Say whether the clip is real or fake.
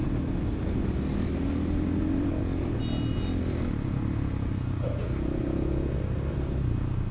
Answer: real